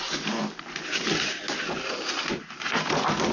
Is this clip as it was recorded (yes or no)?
yes